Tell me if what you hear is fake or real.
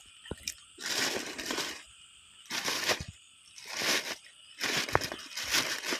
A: fake